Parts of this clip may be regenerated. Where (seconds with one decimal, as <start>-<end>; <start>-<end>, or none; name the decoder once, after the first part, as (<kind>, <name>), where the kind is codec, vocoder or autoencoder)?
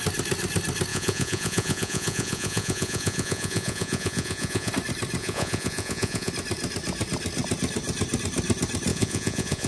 0.9-4.7 (vocoder, Vocos); 5.2-6.3; 8.9-9.7